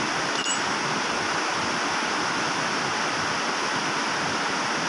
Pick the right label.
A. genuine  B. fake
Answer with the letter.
A